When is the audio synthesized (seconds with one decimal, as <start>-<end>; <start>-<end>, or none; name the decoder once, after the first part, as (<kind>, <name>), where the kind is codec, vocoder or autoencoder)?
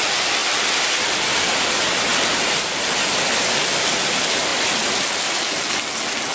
none